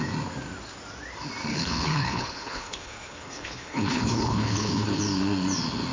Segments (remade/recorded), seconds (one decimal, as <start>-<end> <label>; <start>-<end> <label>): 0.0-1.5 recorded; 1.5-5.0 remade; 5.0-5.9 recorded